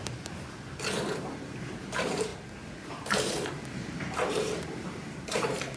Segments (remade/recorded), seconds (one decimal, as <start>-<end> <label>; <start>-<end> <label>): 0.0-2.3 remade; 2.3-2.9 recorded; 2.9-5.8 remade